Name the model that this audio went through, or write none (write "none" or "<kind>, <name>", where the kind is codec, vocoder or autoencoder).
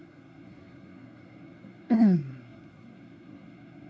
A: codec, SNAC